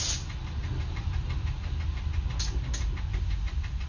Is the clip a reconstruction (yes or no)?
no